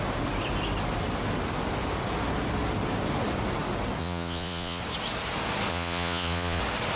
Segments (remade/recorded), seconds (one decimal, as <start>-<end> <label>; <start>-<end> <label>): 0.0-4.0 recorded; 4.0-4.8 remade; 4.8-5.7 recorded; 5.7-6.6 remade; 6.6-7.0 recorded